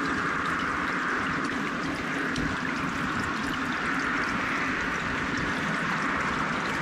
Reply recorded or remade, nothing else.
recorded